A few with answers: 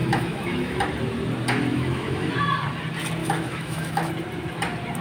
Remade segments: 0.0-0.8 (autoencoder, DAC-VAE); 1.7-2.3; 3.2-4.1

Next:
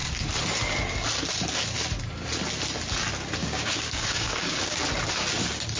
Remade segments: 3.4-4.8 (codec, DAC)

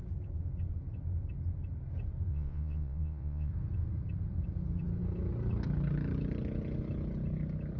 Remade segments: 2.3-3.5 (vocoder, Vocos)

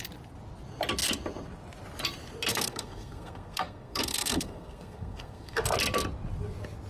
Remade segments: 2.5-5.6 (codec, SNAC)

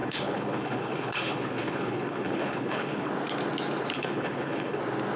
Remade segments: 0.0-3.1 (codec, HILCodec); 3.9-4.8